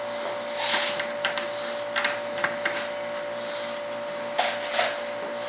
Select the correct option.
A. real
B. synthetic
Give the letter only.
A